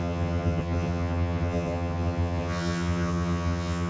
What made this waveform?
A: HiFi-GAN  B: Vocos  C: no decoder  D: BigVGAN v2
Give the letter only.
A